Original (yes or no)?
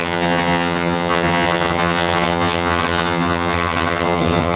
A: no